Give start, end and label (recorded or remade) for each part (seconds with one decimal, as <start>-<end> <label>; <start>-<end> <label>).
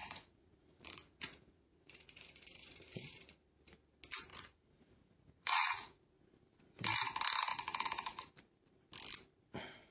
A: 0.0-3.5 remade; 3.5-4.3 recorded; 4.3-6.1 remade; 6.1-7.5 recorded; 7.5-8.3 remade; 8.3-9.9 recorded